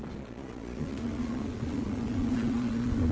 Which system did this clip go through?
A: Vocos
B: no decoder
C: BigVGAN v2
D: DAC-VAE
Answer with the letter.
A